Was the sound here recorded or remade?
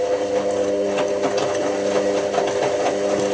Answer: recorded